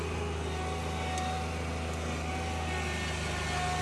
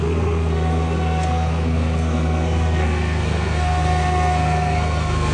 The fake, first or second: second